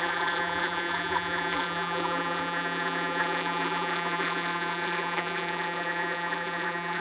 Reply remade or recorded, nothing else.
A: remade